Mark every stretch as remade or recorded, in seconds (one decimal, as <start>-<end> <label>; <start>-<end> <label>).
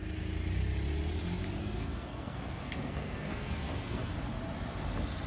0.0-1.6 recorded; 1.6-4.1 remade; 4.1-5.3 recorded